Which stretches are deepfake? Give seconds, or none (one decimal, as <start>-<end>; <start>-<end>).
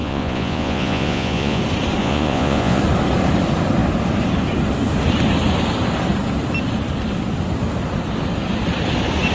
0.0-1.6; 2.0-2.8